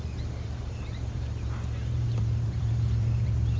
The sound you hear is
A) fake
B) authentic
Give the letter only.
A